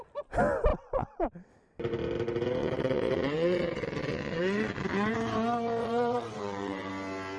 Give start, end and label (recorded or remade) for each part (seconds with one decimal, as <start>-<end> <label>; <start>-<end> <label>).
0.0-0.7 recorded; 0.7-1.5 remade; 1.5-2.6 recorded; 2.6-5.1 remade; 5.1-5.8 recorded; 5.8-6.9 remade; 6.9-7.4 recorded